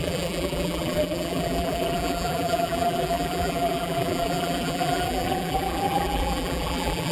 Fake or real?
fake